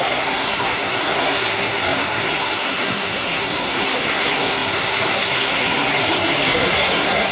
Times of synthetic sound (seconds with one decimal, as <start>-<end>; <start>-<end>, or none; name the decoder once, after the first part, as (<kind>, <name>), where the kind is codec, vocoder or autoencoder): 0.0-7.3 (codec, SNAC)